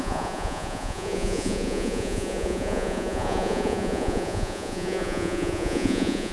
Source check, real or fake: fake